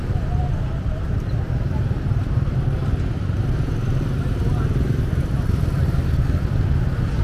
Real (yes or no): yes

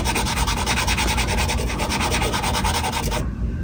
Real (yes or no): yes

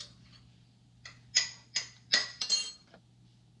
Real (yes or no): yes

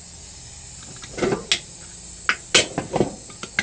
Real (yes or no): yes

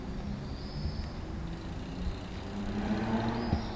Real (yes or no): yes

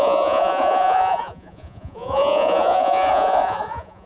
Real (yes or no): no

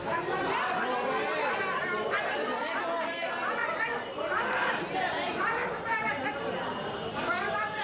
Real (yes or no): no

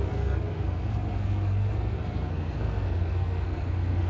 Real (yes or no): no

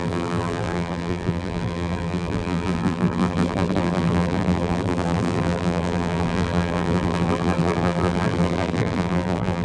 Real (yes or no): no